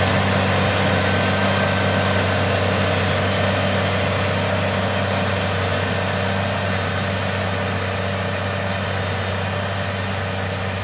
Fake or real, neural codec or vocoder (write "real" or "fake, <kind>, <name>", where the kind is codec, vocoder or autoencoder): real